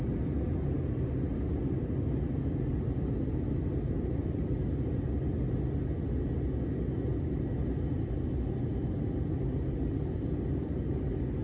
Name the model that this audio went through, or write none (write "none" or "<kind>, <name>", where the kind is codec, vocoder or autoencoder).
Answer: none